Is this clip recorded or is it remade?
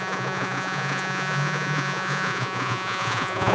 remade